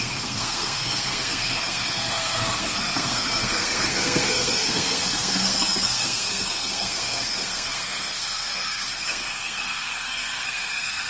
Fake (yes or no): yes